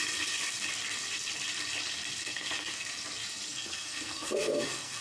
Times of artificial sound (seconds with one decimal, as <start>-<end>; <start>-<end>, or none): 2.2-2.9; 3.5-5.0